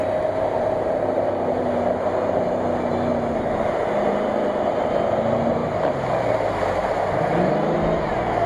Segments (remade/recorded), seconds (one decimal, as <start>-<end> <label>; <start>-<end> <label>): 0.0-8.5 recorded